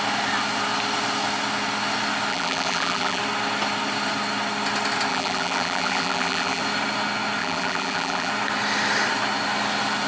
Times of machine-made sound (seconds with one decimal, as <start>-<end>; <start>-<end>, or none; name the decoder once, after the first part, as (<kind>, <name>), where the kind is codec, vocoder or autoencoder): 2.3-3.2 (vocoder, BigVGAN v2); 5.1-6.6; 7.4-8.3